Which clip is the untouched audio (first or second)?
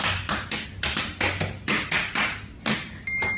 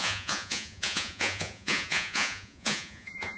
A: first